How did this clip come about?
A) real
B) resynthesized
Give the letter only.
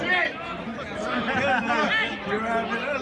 A